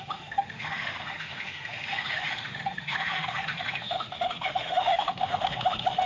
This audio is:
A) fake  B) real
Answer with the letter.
A